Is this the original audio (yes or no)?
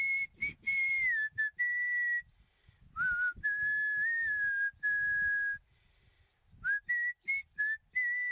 yes